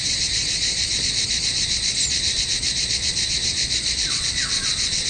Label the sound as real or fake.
fake